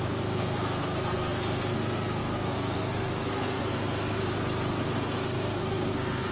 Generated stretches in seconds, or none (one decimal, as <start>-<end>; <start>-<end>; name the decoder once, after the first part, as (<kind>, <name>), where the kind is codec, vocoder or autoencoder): 0.0-4.2 (codec, SNAC); 4.8-6.3